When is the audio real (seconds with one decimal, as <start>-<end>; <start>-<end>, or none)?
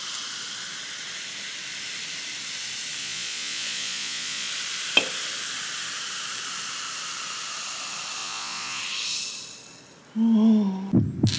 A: 0.0-3.0; 4.5-8.2; 8.8-11.4